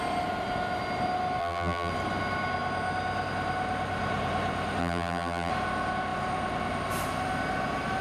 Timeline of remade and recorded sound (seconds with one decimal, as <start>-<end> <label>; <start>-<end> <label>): 0.0-1.4 recorded; 1.4-1.9 remade; 1.9-4.8 recorded; 4.8-5.5 remade; 5.5-8.0 recorded